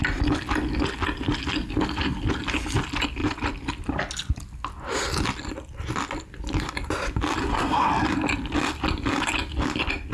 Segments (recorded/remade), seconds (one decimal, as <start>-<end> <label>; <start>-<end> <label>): 0.0-7.4 recorded; 7.4-7.9 remade; 7.9-10.1 recorded